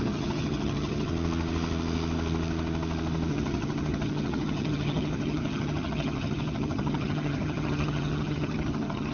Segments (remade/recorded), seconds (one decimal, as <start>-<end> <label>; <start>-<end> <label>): 0.0-1.1 remade; 1.1-3.3 recorded; 3.3-9.1 remade